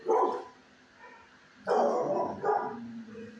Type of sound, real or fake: real